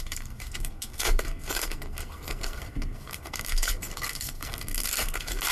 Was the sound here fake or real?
fake